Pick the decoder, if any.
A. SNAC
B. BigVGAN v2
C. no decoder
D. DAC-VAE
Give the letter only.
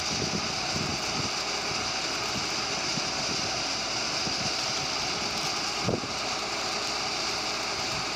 C